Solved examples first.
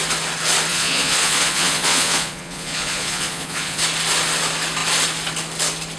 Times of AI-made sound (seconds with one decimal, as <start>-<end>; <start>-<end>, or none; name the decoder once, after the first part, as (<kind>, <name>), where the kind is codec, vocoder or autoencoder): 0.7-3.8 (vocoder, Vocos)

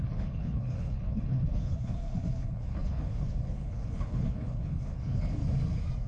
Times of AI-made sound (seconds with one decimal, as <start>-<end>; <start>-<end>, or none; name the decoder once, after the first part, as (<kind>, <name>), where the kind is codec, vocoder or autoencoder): 0.0-5.4 (codec, HILCodec)

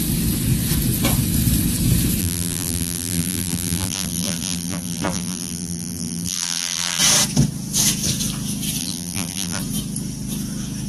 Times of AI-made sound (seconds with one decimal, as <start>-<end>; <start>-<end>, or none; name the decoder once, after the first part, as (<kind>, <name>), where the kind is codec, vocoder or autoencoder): 2.2-7.0 (vocoder, BigVGAN v2); 8.8-9.6